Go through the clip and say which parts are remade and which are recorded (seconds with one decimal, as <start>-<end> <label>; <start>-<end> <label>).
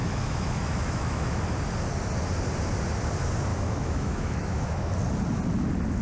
0.0-1.4 remade; 1.4-3.5 recorded; 3.5-4.9 remade; 4.9-6.0 recorded